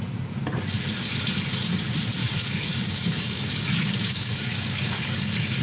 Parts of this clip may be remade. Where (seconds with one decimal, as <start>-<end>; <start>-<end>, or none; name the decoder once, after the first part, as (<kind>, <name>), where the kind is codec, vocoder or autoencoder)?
2.2-5.6 (codec, DAC)